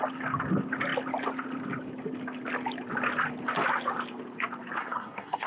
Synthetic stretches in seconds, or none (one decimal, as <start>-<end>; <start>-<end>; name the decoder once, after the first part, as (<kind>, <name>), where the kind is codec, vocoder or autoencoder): 4.8-5.5 (codec, SNAC)